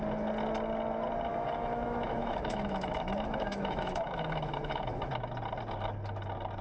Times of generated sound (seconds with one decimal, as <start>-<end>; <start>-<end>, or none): 1.3-5.1